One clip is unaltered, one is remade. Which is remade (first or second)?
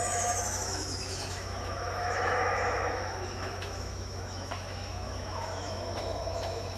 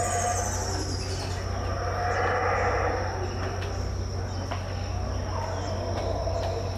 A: first